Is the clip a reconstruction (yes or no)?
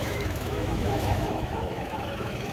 yes